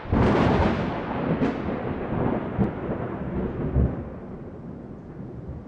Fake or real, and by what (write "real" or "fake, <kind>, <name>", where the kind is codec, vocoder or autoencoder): real